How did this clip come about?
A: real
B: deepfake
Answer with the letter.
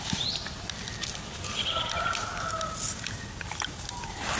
A